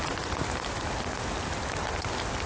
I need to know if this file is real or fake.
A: real